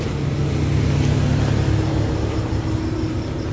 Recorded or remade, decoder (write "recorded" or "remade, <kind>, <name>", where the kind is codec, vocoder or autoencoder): recorded